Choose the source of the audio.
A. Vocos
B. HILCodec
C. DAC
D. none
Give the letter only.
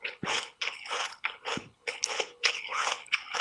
B